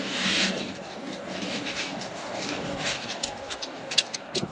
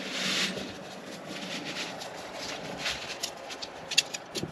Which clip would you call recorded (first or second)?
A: second